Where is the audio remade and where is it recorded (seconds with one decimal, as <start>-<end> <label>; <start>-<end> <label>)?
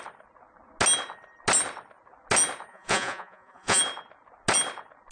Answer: 0.0-2.7 recorded; 2.7-3.8 remade; 3.8-5.1 recorded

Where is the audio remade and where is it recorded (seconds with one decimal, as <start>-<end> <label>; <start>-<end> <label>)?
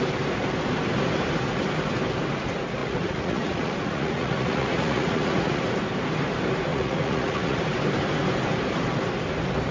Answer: 0.0-2.8 recorded; 2.8-5.6 remade; 5.6-6.7 recorded; 6.7-7.6 remade; 7.6-9.7 recorded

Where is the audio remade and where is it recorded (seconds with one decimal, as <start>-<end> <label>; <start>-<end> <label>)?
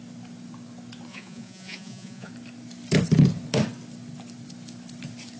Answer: 0.0-1.1 recorded; 1.1-2.3 remade; 2.3-5.4 recorded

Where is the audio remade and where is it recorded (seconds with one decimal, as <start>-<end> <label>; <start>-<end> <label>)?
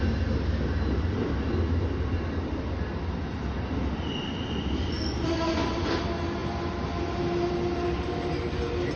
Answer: 0.0-9.0 recorded